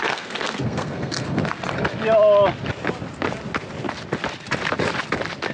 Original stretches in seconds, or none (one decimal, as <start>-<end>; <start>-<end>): 1.6-5.5